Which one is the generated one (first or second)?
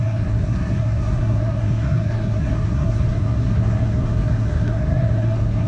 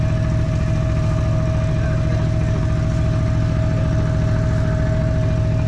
first